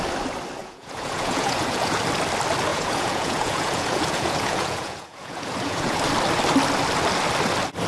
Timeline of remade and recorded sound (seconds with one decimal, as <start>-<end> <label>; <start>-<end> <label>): 0.0-0.6 recorded; 0.6-2.0 remade; 2.0-2.7 recorded; 2.7-6.0 remade; 6.0-7.9 recorded